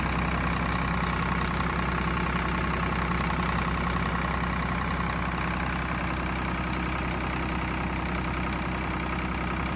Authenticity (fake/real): real